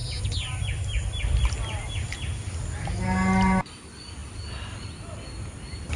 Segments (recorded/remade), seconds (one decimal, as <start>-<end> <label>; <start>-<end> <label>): 0.0-6.0 recorded